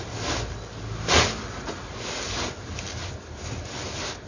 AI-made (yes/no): no